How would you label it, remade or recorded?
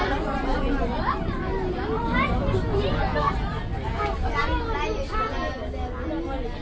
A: recorded